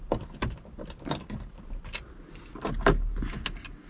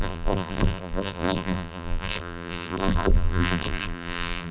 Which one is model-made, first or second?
second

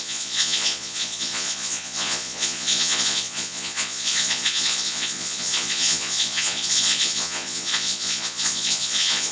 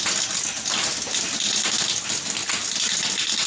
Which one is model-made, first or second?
first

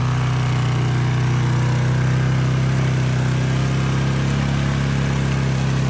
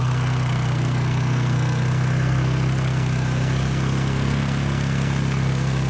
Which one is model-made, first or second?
second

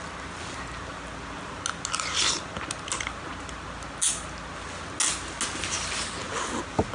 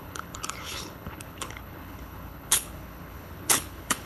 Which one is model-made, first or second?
second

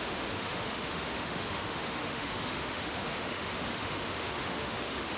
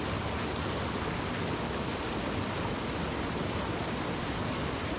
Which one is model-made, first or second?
first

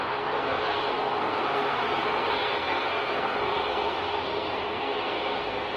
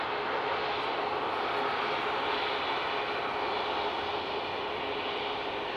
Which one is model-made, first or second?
first